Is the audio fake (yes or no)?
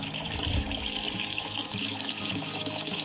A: yes